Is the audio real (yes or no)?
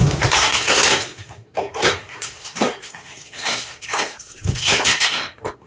no